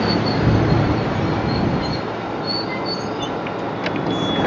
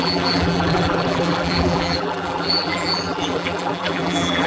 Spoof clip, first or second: second